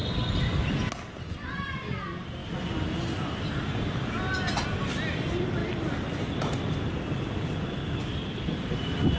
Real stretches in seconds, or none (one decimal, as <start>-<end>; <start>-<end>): 0.0-9.2